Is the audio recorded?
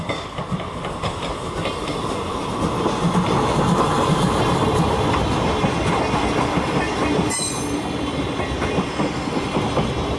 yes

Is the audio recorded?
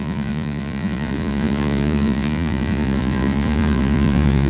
no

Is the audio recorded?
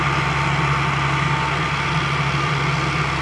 yes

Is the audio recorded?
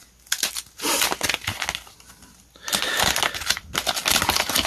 yes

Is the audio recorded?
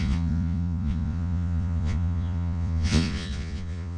no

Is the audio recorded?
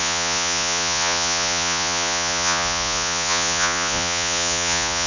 no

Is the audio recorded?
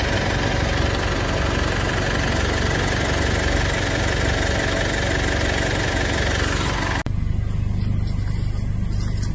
yes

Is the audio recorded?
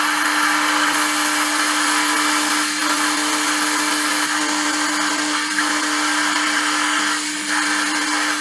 yes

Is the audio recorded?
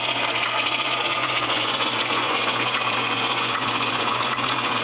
no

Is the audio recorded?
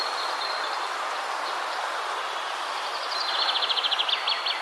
yes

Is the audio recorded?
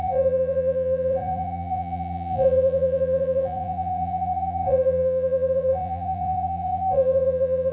no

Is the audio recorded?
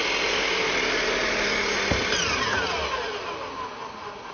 yes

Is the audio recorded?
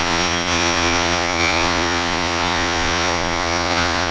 no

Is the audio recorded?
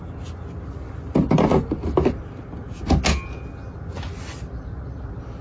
yes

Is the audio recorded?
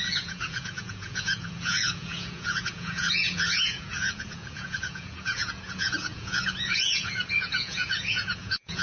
no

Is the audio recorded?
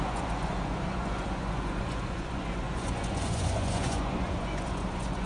no